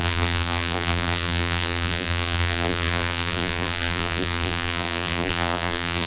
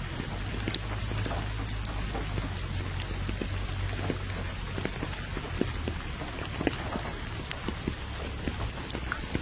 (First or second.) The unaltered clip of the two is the second